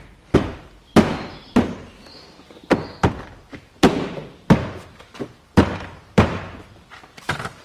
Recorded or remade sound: remade